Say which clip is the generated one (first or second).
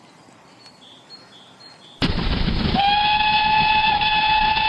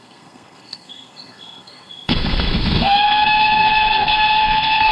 second